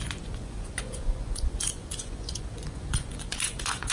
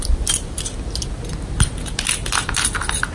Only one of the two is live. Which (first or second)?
second